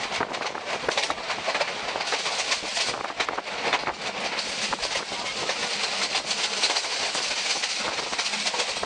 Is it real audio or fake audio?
real